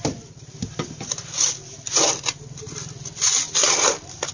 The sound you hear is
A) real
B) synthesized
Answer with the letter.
A